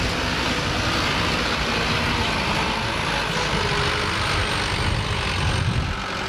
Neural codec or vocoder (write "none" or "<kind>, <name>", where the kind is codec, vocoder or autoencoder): none